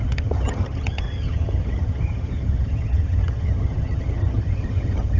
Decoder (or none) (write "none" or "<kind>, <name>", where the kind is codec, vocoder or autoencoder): vocoder, HiFi-GAN